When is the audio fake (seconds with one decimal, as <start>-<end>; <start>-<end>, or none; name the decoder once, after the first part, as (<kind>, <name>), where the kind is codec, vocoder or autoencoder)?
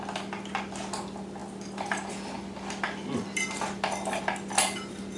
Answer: none